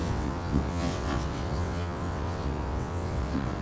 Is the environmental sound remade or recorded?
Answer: remade